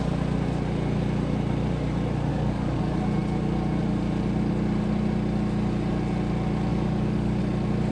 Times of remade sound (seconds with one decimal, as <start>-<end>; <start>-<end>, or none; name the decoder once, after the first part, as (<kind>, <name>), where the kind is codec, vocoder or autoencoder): 2.3-2.8 (codec, DAC); 6.7-7.4